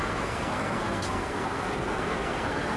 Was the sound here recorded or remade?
remade